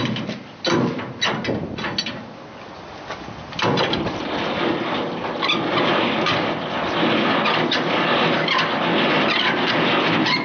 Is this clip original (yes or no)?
yes